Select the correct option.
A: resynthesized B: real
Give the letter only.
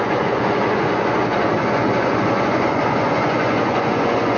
A